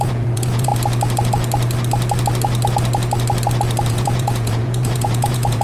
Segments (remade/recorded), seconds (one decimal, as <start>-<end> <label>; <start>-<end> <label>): 0.0-0.7 remade; 0.7-3.9 recorded; 3.9-5.6 remade